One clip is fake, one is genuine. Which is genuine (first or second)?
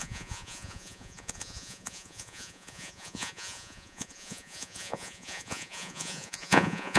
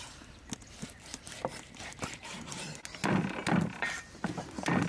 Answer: second